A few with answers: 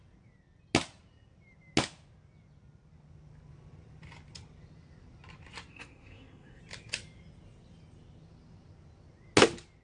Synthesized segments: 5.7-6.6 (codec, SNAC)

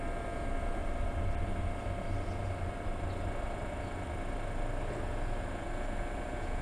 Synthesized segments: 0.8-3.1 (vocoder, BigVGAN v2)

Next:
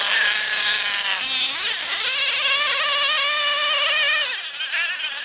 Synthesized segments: none

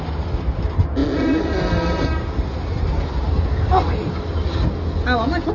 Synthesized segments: none